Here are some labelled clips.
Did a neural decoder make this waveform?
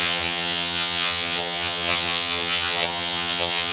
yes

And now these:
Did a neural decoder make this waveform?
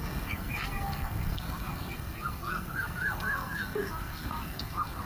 yes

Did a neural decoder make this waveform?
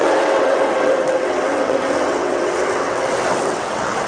yes